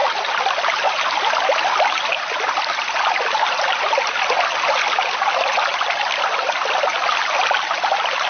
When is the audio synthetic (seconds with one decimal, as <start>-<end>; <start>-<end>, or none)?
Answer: none